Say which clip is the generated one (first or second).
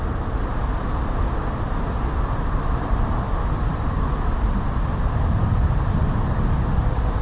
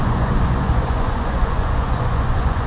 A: second